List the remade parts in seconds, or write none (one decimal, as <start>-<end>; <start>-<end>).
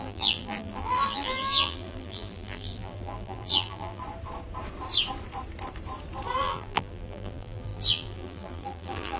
0.0-4.0; 6.4-9.2